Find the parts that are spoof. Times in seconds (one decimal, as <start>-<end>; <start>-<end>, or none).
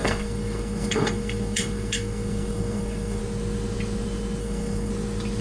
0.0-3.2; 4.4-4.9